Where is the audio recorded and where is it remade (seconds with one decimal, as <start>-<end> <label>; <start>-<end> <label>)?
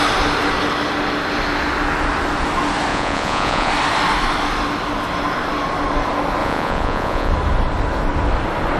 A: 0.0-2.9 recorded; 2.9-3.7 remade; 3.7-6.4 recorded; 6.4-7.3 remade; 7.3-8.8 recorded